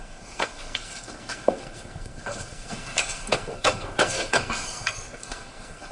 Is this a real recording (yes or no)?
no